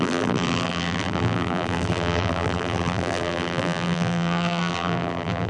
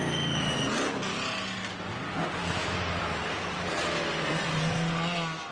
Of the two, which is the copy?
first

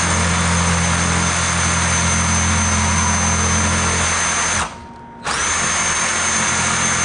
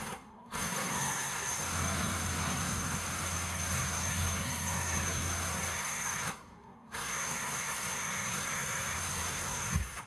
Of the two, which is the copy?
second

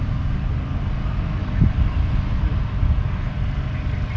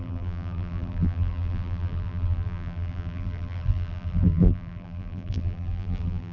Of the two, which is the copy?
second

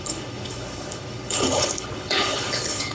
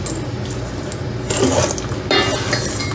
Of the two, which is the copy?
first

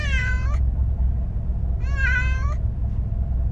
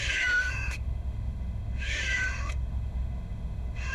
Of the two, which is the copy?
second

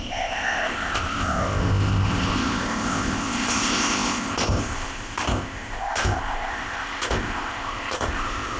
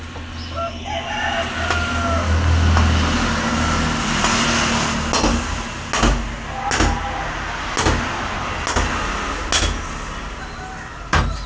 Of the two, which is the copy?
first